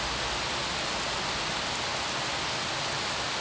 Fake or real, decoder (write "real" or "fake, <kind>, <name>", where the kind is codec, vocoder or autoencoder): real